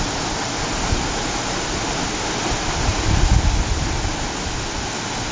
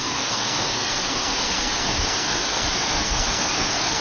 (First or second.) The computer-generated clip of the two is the second